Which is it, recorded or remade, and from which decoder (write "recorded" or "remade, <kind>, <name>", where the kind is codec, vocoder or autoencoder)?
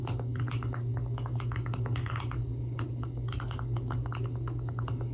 remade, codec, DAC